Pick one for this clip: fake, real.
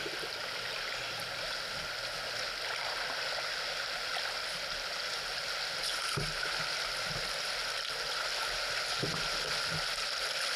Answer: real